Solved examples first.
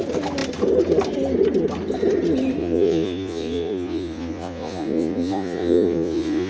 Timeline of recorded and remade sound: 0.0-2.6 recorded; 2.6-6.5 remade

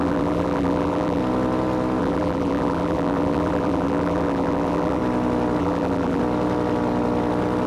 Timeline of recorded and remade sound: 0.0-1.2 remade; 1.2-2.0 recorded; 2.0-5.0 remade; 5.0-5.6 recorded; 5.6-6.2 remade; 6.2-7.7 recorded